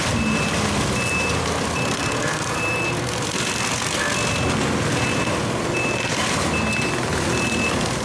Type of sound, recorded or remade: recorded